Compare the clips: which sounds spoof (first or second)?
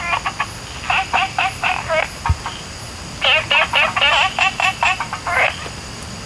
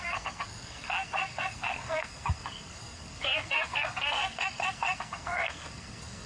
second